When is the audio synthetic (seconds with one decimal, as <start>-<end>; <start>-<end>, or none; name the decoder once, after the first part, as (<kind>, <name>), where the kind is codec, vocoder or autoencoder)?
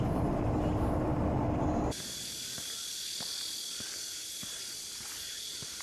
none